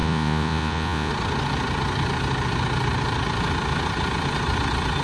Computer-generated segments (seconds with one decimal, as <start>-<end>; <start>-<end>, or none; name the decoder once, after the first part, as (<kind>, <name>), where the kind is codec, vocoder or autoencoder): 0.0-1.1 (vocoder, Vocos)